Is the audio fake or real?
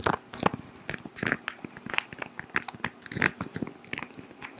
real